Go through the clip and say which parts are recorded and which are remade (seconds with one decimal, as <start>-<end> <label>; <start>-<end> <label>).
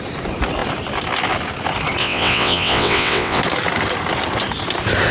0.0-2.0 recorded; 2.0-3.4 remade; 3.4-5.1 recorded